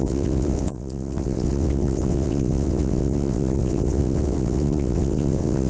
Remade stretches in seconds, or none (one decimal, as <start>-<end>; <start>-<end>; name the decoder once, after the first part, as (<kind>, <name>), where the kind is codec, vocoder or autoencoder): 0.0-5.7 (vocoder, WaveNeXt)